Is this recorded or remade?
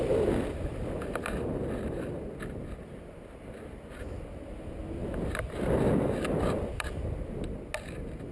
recorded